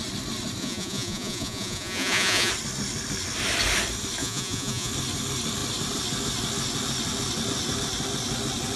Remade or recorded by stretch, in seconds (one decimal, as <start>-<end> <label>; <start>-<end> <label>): 0.0-0.6 recorded; 0.6-2.5 remade; 2.5-4.2 recorded; 4.2-4.9 remade; 4.9-8.8 recorded